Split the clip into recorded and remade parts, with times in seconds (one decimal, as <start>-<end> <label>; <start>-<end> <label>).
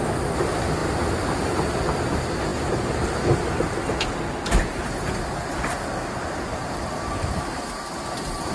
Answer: 0.0-8.5 recorded